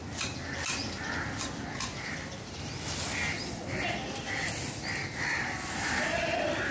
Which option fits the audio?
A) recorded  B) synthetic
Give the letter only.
A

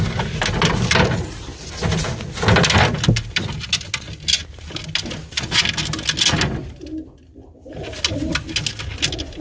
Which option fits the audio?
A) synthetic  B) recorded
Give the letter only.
B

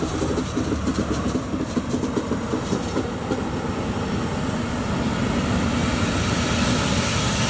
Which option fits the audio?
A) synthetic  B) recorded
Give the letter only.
B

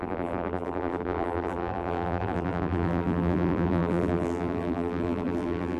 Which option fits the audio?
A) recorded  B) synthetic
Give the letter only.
B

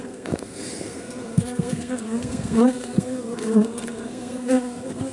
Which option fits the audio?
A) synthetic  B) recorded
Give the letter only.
A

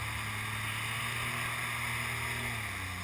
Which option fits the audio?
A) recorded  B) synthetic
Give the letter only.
A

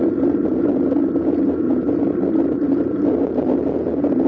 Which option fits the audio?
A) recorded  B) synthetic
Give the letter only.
A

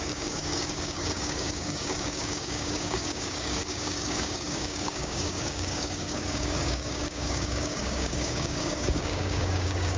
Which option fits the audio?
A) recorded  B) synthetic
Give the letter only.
B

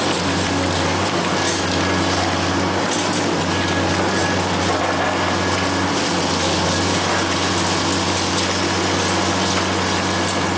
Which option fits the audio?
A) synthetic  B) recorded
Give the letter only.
B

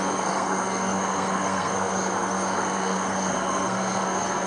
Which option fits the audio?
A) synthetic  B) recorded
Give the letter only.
A